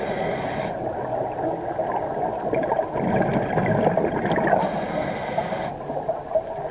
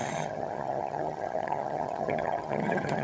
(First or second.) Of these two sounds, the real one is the first